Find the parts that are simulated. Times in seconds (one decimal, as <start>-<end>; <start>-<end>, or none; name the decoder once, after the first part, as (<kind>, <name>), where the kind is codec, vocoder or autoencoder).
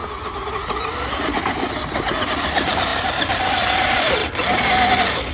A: 2.5-4.2 (vocoder, BigVGAN v2)